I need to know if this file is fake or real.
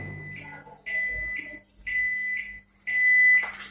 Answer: real